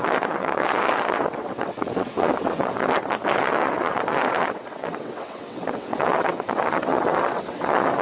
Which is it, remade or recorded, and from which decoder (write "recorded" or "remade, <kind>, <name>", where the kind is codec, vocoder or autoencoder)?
remade, vocoder, WaveNeXt